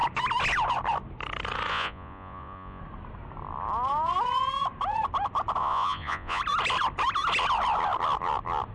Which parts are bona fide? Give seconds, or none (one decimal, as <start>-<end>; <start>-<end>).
0.0-1.7; 2.8-5.6; 6.4-8.7